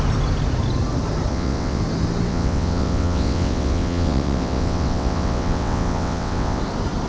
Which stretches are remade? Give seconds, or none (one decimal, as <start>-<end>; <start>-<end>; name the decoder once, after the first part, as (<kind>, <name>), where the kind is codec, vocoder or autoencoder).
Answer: 1.3-1.8 (vocoder, WaveNeXt); 2.3-6.6